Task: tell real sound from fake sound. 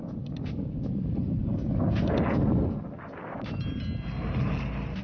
real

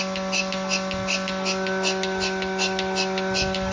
real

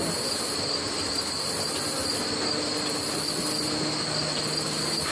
real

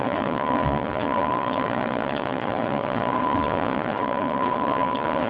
fake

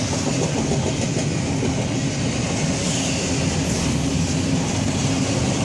real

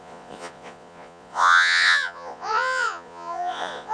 fake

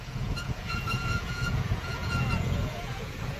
fake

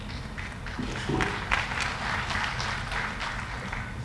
real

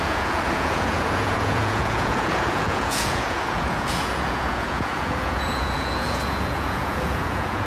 fake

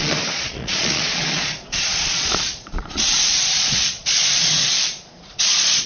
fake